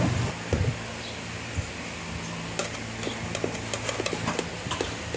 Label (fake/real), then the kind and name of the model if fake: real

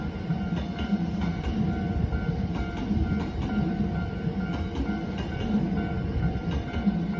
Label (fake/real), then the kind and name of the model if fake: real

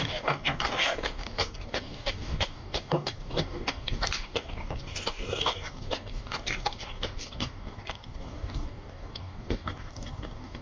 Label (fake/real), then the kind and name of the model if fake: fake, codec, DAC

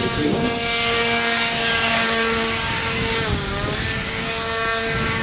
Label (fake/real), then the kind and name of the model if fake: fake, codec, DAC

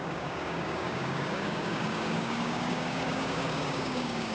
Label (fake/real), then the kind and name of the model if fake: fake, codec, DAC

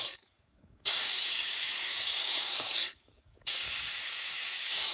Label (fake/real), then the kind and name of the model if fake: fake, codec, DAC